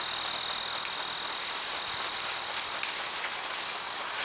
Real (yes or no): yes